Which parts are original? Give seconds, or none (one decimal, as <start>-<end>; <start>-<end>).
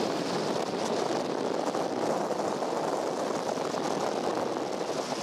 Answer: 0.0-5.2